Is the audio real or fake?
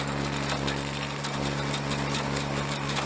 real